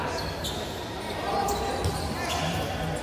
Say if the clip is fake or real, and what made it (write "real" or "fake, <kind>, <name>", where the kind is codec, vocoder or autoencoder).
real